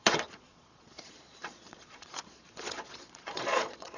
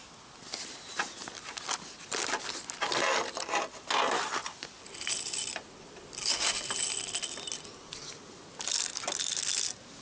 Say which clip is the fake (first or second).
first